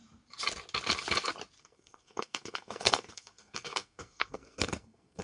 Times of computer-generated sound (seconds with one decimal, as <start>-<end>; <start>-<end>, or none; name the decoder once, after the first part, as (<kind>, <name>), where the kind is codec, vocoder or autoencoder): 1.6-5.2 (codec, SNAC)